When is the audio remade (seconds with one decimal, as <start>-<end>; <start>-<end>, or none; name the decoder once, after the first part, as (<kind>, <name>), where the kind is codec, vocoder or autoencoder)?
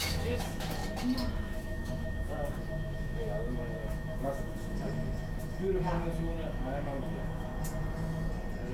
0.0-0.8 (autoencoder, DAC-VAE); 1.4-7.5